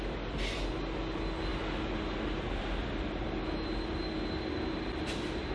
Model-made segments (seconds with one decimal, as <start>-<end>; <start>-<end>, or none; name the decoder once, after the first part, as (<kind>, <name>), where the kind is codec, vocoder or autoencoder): none

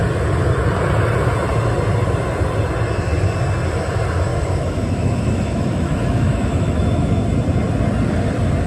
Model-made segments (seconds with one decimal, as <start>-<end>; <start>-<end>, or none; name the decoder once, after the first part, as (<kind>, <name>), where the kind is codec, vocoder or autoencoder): 4.3-7.2 (autoencoder, DAC-VAE)

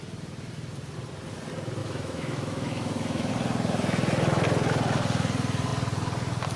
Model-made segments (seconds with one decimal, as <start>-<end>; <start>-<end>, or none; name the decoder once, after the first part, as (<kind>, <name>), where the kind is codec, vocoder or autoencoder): 1.8-3.3 (autoencoder, DAC-VAE)

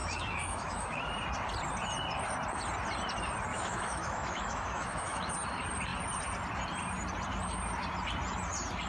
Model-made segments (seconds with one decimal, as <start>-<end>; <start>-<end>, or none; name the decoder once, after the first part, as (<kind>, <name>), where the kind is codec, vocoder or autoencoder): 0.0-1.1 (autoencoder, DAC-VAE); 3.5-5.3

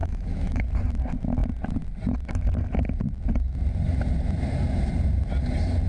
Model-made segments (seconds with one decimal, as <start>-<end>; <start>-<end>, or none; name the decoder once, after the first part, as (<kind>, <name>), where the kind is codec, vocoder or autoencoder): 0.0-0.6 (autoencoder, DAC-VAE)

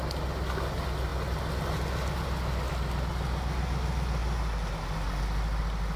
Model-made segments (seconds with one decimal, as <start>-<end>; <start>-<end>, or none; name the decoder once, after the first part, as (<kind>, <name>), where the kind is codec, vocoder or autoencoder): none